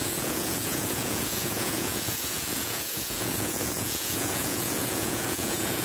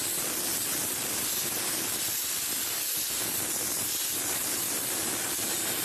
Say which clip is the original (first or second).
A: second